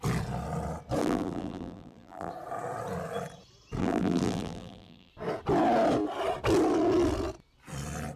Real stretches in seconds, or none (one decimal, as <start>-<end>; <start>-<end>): 0.0-1.0; 2.3-3.8; 5.1-8.2